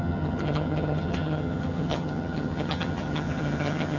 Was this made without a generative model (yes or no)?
no